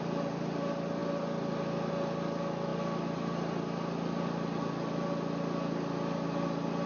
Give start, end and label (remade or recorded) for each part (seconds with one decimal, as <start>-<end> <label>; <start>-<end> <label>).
0.0-6.9 recorded